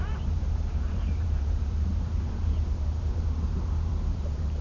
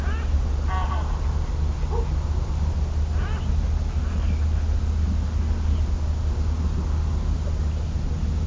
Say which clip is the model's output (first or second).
first